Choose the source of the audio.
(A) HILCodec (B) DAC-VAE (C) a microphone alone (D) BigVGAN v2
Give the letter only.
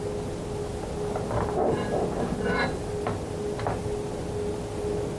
C